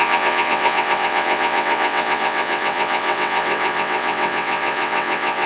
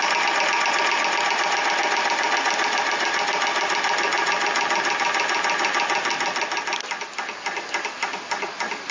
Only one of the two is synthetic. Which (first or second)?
first